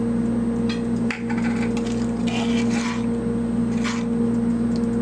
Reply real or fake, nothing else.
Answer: real